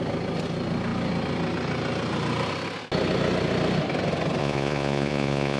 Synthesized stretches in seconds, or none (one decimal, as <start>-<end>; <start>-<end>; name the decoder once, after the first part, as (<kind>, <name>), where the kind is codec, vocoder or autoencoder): 4.4-5.6 (vocoder, Vocos)